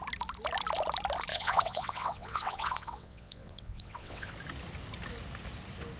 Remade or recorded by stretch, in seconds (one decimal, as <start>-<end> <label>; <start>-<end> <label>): 0.0-1.3 recorded; 1.3-4.3 remade; 4.3-6.0 recorded